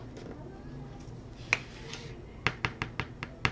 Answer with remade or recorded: recorded